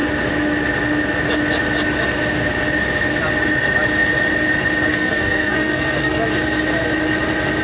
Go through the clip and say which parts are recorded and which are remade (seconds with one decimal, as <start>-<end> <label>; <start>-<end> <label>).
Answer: 0.0-4.9 recorded; 4.9-6.2 remade; 6.2-7.6 recorded

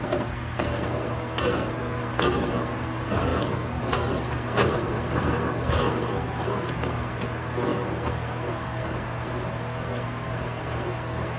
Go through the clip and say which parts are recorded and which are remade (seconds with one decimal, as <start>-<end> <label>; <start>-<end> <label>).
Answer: 0.0-11.4 remade

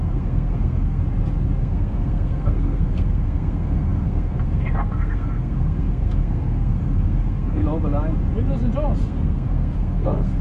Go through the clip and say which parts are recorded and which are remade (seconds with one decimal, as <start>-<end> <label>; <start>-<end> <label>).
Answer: 0.0-1.0 remade; 1.0-1.6 recorded; 1.6-7.6 remade; 7.6-9.0 recorded; 9.0-10.4 remade

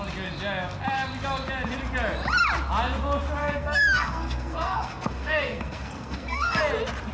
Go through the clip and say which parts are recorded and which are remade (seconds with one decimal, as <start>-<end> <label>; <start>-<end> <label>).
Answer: 0.0-3.4 recorded; 3.4-6.6 remade; 6.6-7.1 recorded

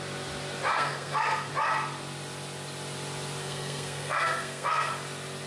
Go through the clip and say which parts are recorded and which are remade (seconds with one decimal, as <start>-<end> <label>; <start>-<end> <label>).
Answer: 0.0-0.7 recorded; 0.7-1.5 remade; 1.5-3.4 recorded; 3.4-4.9 remade; 4.9-5.5 recorded

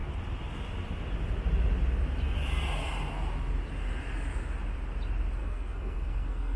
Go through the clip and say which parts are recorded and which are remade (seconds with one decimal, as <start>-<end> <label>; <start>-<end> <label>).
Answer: 0.0-5.4 recorded; 5.4-6.6 remade